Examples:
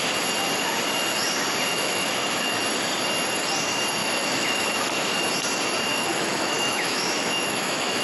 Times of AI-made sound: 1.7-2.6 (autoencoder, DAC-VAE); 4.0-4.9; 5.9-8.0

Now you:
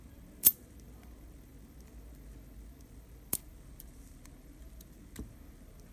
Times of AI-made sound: none

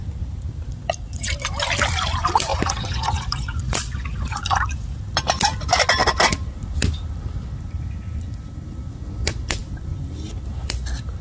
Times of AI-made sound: 0.7-1.3 (vocoder, Vocos); 2.5-5.0

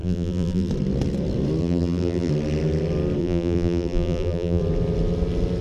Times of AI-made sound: 0.0-0.7 (vocoder, BigVGAN v2); 1.6-2.3; 3.2-4.6

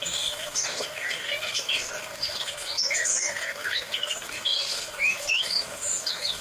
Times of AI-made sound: 0.0-6.4 (codec, DAC)

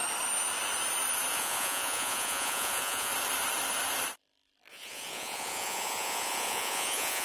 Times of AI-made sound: 1.3-3.1 (vocoder, Vocos); 4.7-7.2

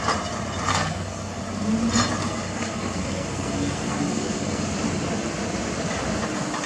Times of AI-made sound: 0.7-1.4 (codec, SNAC); 2.2-4.6